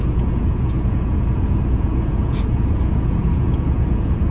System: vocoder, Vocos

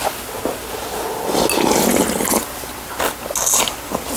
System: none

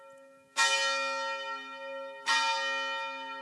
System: none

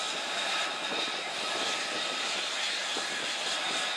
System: none